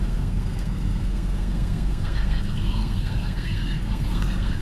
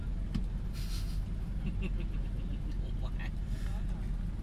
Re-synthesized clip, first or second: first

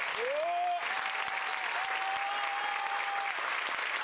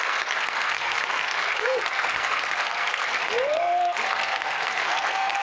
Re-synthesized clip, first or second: second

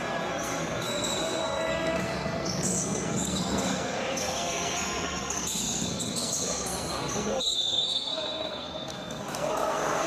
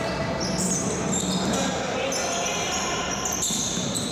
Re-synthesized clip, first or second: first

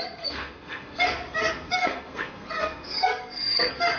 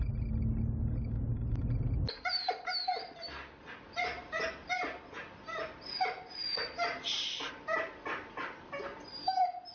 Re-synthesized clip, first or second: first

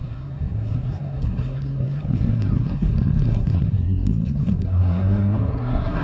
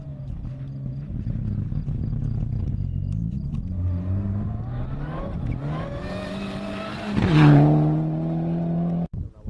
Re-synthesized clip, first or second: first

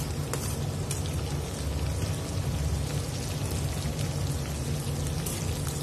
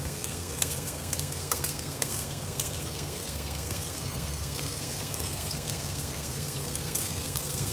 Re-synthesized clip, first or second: second